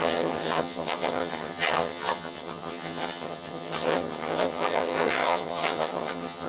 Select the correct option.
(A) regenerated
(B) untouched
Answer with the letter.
A